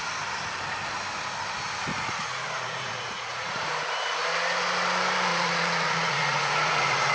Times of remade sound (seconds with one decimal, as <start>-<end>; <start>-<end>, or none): 1.9-3.8; 5.3-7.1

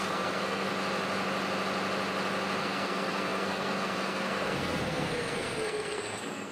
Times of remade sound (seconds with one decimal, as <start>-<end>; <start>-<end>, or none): 0.0-0.7; 2.6-6.5

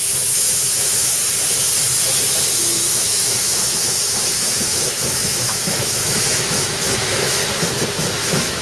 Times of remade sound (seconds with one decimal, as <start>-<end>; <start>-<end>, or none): 0.0-1.2; 2.6-7.4; 8.2-8.6

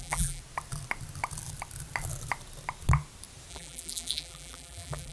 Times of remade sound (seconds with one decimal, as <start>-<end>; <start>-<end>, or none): 0.0-0.4; 3.5-5.1

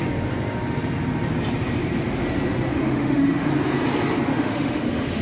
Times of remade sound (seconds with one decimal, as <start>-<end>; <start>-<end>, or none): 2.7-3.5; 4.3-5.2